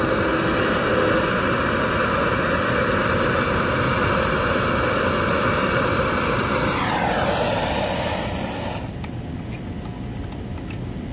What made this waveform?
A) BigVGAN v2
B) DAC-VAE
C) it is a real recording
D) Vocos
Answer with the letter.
C